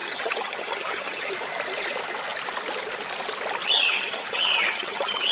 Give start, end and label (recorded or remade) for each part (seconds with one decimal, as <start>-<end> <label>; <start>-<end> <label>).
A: 0.0-1.3 remade; 1.3-3.6 recorded; 3.6-5.3 remade